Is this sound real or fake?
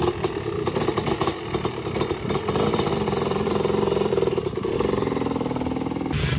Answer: fake